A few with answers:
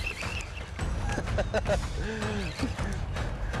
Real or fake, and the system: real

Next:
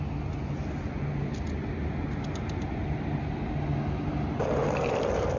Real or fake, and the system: real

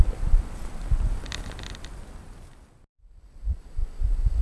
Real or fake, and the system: real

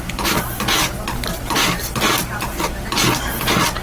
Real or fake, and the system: real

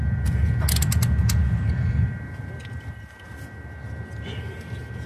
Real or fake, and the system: real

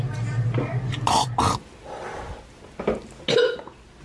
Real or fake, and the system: real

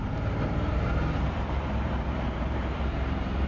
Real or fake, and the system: fake, vocoder, BigVGAN v2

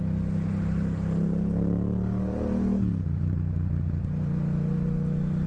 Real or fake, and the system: real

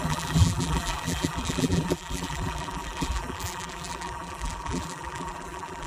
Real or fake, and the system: fake, vocoder, BigVGAN v2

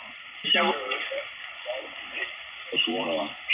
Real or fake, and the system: fake, vocoder, BigVGAN v2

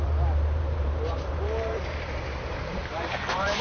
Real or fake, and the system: fake, vocoder, BigVGAN v2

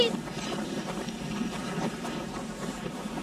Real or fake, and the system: fake, vocoder, BigVGAN v2